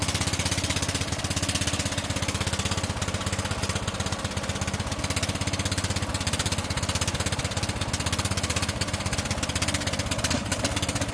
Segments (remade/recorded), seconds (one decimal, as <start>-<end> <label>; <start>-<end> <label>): 0.0-11.1 recorded